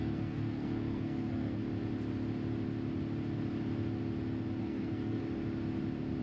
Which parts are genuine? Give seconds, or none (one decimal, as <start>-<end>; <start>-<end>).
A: 1.6-4.6; 5.2-6.2